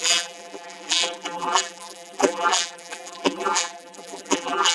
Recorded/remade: remade